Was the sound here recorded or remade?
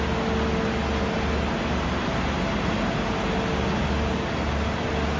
recorded